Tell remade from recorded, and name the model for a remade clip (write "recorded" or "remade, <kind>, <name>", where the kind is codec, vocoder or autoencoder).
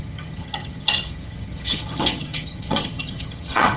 remade, vocoder, HiFi-GAN